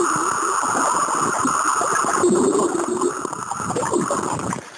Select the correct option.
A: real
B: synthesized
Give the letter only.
A